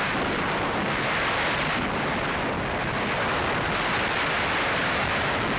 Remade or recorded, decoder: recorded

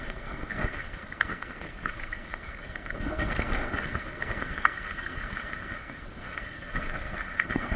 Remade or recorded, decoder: remade, codec, SNAC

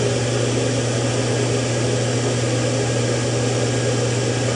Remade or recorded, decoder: recorded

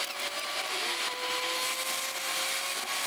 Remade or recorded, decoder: recorded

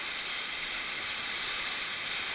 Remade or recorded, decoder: recorded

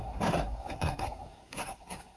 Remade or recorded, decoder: remade, codec, SNAC